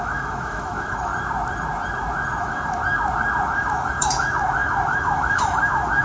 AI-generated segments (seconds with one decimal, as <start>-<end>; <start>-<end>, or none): 0.0-1.1; 2.4-2.8; 3.4-6.0